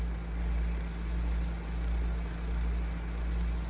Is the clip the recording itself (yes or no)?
yes